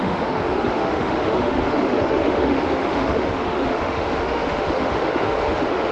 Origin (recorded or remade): remade